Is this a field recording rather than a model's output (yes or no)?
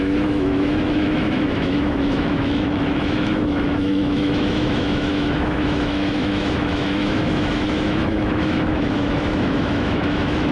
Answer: no